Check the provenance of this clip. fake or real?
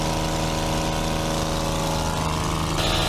real